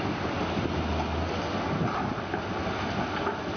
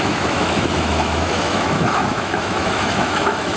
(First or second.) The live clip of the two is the first